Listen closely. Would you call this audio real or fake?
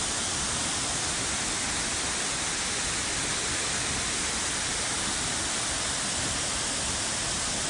real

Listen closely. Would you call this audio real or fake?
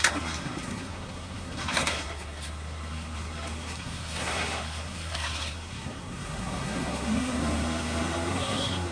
fake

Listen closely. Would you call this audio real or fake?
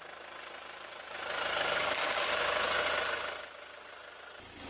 real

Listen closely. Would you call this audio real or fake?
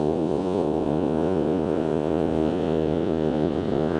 fake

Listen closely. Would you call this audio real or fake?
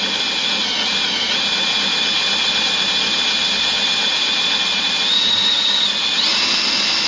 real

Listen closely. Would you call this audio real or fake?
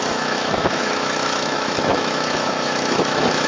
fake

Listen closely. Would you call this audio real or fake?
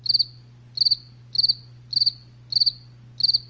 real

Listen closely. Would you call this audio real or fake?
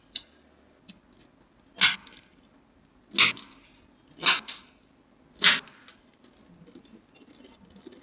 real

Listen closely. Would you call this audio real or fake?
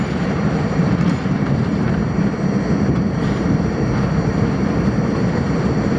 fake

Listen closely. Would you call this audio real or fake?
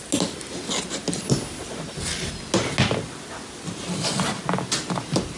real